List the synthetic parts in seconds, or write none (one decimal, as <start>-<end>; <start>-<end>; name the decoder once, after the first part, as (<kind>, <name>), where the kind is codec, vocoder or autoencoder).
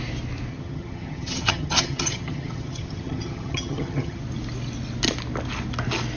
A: 0.5-4.2 (vocoder, HiFi-GAN)